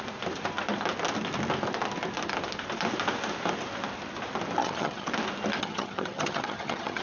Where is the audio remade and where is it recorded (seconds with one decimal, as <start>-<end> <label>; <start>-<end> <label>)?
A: 0.0-4.6 recorded; 4.6-5.1 remade; 5.1-5.6 recorded; 5.6-7.0 remade